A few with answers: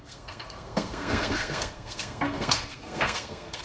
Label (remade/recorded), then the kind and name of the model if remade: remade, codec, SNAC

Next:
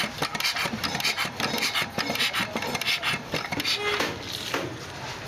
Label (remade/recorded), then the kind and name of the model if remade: recorded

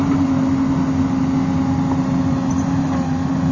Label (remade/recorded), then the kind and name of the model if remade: recorded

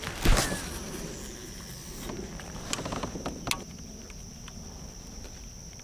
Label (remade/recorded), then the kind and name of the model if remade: recorded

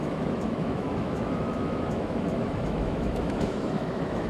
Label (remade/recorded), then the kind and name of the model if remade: remade, autoencoder, DAC-VAE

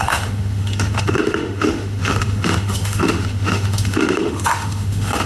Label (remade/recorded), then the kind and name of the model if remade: remade, autoencoder, DAC-VAE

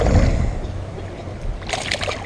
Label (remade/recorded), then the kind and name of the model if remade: recorded